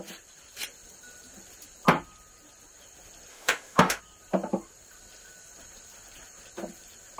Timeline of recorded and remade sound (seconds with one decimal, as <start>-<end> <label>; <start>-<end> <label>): 0.0-3.3 recorded; 3.3-4.0 remade; 4.0-7.2 recorded